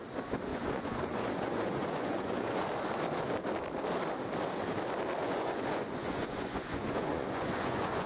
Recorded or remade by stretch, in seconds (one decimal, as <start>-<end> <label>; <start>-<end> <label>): 0.0-0.5 recorded; 0.5-2.7 remade; 2.7-5.2 recorded; 5.2-8.1 remade